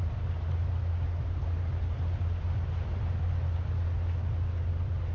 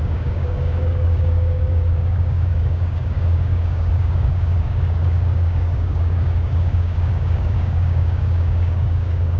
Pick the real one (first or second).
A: first